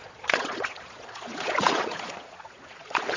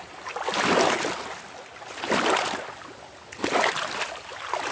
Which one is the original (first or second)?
second